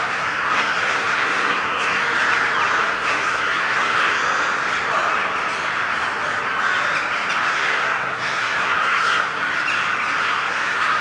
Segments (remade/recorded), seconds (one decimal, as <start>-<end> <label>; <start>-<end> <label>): 0.0-2.0 remade; 2.0-2.8 recorded; 2.8-4.2 remade; 4.2-7.5 recorded; 7.5-9.4 remade; 9.4-10.2 recorded; 10.2-11.0 remade